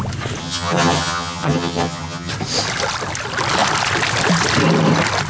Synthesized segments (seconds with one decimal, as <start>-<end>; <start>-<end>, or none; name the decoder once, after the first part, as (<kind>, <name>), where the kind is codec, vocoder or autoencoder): 0.4-2.3 (vocoder, HiFi-GAN)